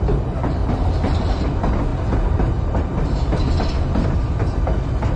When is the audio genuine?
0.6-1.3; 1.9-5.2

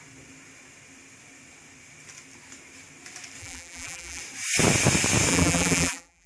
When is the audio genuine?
0.0-3.4; 4.2-5.3

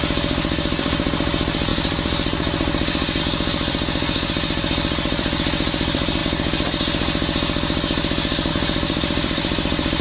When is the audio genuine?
6.2-8.5

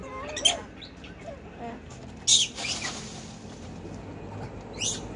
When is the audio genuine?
0.0-2.3; 3.9-5.2

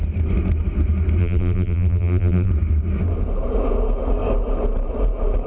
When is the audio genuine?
0.0-1.2; 2.5-5.5

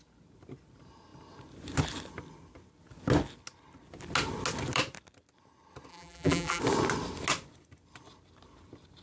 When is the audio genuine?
0.0-5.9; 6.6-9.0

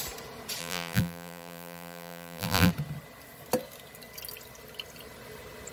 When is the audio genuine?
0.0-0.6; 2.7-5.7